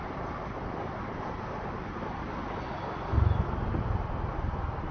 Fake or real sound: fake